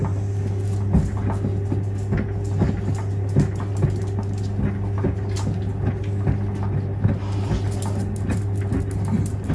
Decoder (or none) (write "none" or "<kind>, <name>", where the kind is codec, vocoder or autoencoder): none